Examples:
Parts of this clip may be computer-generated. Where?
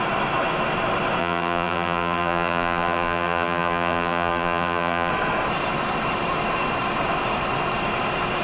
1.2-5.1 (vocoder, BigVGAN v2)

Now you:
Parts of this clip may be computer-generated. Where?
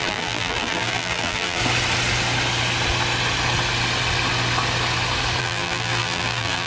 0.0-1.6 (vocoder, BigVGAN v2); 5.4-6.7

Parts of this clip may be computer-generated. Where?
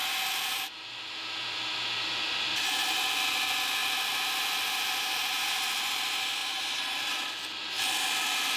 0.0-0.7 (vocoder, BigVGAN v2)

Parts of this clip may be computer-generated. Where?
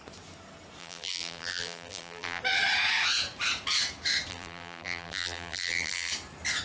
0.8-2.4 (vocoder, BigVGAN v2); 4.3-6.1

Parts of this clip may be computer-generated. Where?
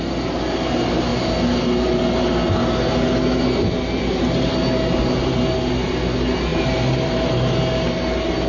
6.5-7.3 (vocoder, BigVGAN v2)